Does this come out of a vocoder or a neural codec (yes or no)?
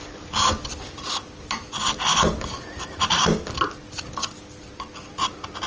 no